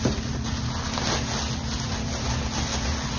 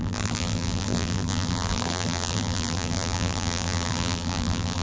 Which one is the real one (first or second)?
first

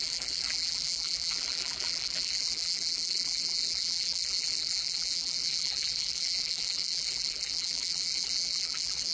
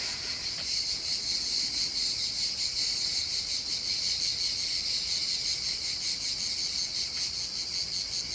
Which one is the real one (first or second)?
second